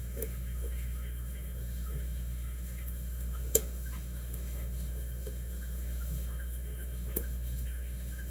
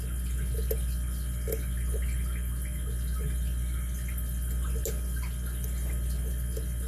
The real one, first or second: second